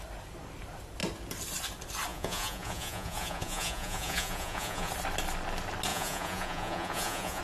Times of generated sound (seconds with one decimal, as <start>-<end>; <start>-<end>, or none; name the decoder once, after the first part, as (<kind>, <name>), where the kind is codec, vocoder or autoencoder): 2.1-4.9 (vocoder, Vocos); 5.9-7.4